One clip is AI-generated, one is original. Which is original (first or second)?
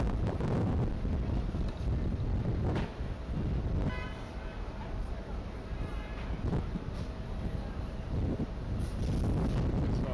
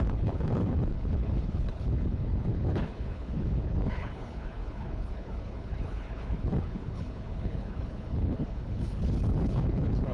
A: first